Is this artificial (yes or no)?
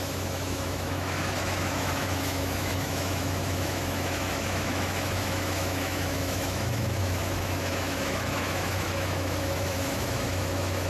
yes